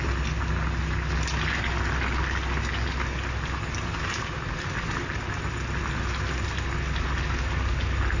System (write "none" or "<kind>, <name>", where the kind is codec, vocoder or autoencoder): none